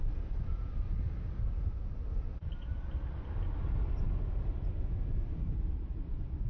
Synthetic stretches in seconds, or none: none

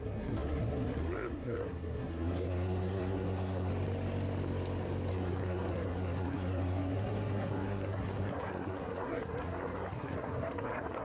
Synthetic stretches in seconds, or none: 0.0-3.7 (codec, SNAC); 5.1-11.0

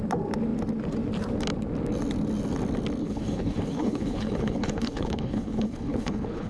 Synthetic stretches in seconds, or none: 3.0-6.5 (codec, HILCodec)

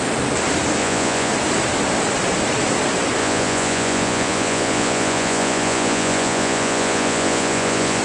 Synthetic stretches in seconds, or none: 0.8-1.3 (vocoder, Vocos); 3.2-8.0

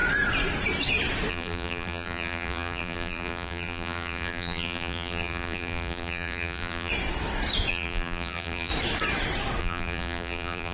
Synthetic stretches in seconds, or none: 1.3-6.9 (vocoder, BigVGAN v2); 7.7-8.7; 9.6-10.7

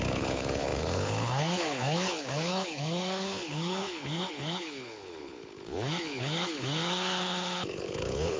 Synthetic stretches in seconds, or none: 0.0-8.4 (codec, HILCodec)